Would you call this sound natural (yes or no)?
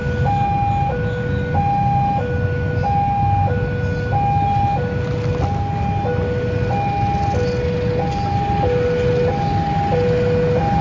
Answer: yes